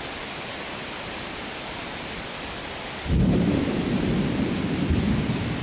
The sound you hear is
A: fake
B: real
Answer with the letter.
A